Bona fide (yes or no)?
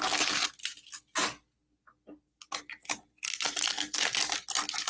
yes